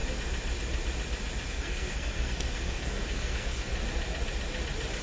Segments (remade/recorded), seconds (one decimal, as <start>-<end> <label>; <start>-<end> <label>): 0.0-1.5 recorded; 1.5-3.7 remade; 3.7-5.0 recorded